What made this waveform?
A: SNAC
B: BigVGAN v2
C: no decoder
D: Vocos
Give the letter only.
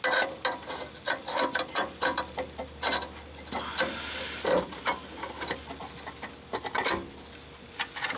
C